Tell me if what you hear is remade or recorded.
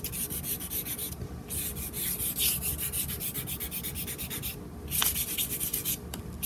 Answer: recorded